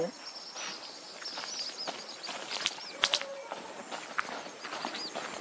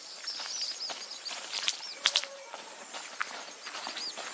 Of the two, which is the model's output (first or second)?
second